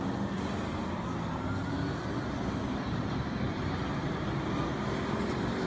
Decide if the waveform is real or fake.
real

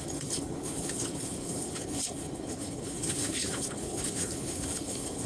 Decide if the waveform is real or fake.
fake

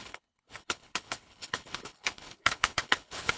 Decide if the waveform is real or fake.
fake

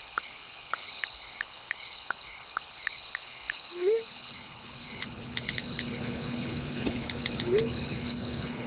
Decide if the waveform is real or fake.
fake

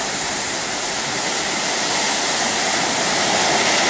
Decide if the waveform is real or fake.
real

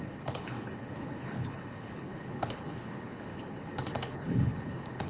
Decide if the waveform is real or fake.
fake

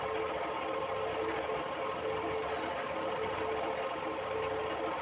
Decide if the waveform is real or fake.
real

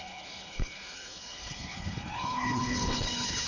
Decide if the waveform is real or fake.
fake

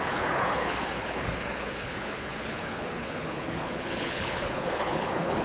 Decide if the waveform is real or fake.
fake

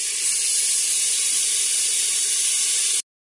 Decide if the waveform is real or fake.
real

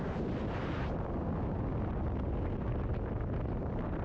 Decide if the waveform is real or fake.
real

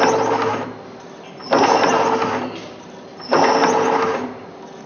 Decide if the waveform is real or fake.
real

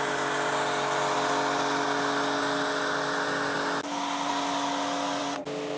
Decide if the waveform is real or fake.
real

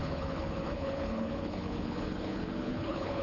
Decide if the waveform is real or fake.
fake